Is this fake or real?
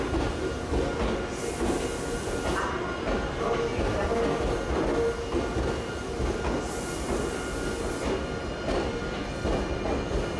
real